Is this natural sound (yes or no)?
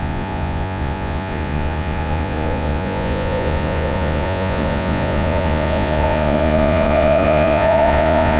no